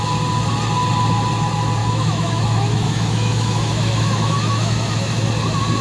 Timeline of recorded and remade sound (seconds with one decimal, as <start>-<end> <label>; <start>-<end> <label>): 0.0-1.8 recorded; 1.8-5.3 remade; 5.3-5.8 recorded